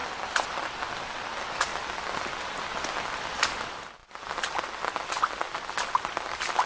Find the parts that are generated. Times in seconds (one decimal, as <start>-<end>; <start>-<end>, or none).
none